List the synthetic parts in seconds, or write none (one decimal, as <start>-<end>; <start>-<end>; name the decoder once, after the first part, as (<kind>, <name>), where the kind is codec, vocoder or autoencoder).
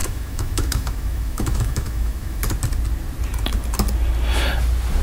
0.0-2.4 (autoencoder, DAC-VAE)